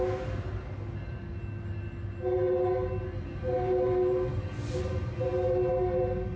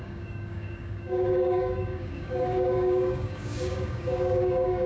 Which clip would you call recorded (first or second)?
first